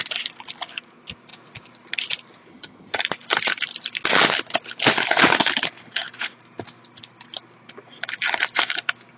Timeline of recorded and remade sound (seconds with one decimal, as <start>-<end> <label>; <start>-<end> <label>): 0.0-2.5 recorded; 2.5-3.0 remade; 3.0-9.2 recorded